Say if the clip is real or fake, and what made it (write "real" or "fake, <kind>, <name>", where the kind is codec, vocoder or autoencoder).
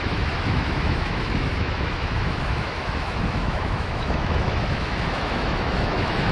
fake, autoencoder, DAC-VAE